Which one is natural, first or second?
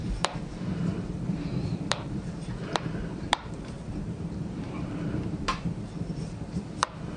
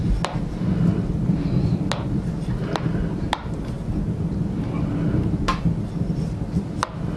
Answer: second